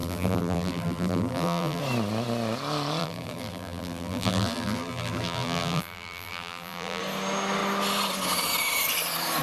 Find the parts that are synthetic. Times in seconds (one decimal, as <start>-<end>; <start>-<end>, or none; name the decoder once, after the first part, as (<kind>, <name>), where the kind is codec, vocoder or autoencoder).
0.0-1.8 (vocoder, BigVGAN v2); 3.0-7.0